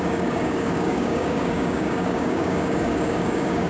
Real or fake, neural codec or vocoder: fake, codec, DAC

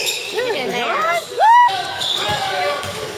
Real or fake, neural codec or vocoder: fake, codec, DAC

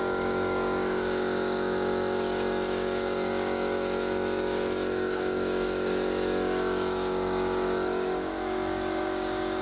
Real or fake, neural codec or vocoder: fake, codec, DAC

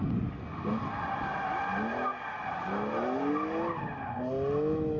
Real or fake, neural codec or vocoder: real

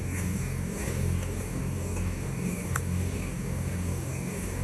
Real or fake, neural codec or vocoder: fake, codec, DAC